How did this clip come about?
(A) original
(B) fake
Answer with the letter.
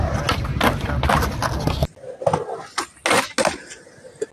A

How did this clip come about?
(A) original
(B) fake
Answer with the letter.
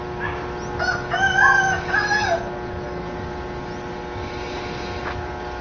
A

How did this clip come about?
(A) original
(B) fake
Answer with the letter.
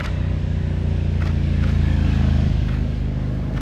B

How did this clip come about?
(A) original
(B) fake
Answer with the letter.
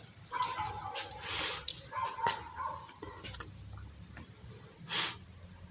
A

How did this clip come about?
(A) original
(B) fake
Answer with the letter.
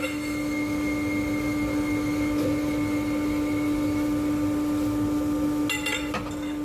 A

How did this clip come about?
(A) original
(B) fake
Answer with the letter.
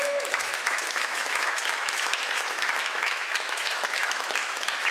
B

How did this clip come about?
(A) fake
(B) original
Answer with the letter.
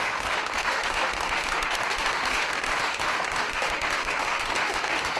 A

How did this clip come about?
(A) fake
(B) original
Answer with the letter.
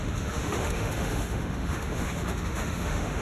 A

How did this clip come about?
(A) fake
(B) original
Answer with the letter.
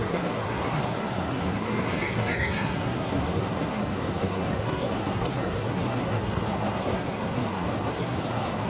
A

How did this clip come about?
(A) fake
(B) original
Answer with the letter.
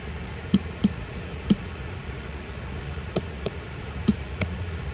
A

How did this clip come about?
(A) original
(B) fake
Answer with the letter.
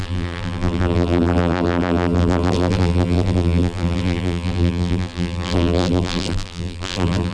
B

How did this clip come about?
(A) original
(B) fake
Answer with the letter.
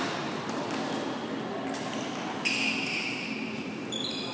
A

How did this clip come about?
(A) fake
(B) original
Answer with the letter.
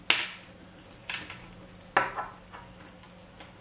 B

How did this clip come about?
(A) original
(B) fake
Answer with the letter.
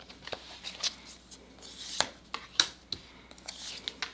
A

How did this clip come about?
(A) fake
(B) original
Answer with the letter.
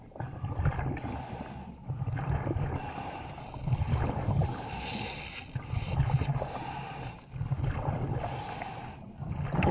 B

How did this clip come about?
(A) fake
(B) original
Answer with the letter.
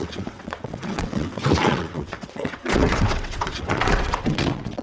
A